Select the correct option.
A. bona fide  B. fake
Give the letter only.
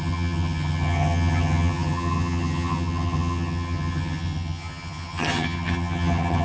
B